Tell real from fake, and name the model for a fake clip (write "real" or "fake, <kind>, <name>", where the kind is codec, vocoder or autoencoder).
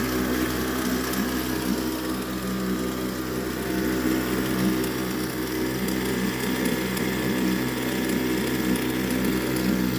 real